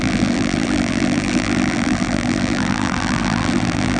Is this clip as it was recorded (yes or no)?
no